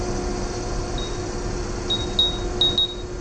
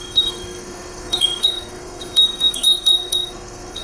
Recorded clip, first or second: first